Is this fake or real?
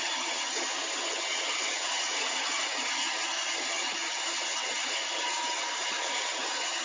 fake